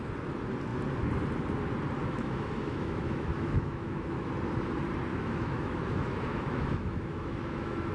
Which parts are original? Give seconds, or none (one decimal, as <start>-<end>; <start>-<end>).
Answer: 0.0-2.0; 4.3-5.1